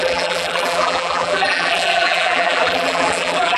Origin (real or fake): fake